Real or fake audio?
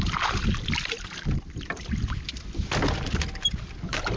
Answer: real